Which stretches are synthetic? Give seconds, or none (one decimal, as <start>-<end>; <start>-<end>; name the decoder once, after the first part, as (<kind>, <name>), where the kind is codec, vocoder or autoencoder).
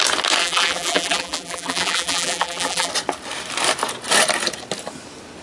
0.4-2.9 (vocoder, BigVGAN v2)